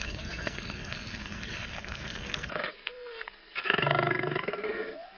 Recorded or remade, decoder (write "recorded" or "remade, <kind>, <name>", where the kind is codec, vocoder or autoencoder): remade, codec, SNAC